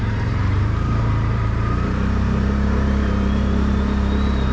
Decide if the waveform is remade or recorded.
remade